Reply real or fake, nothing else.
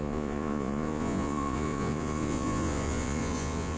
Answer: fake